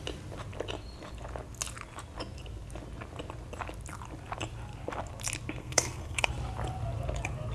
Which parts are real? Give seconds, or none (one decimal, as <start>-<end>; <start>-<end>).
0.0-5.6; 6.3-7.5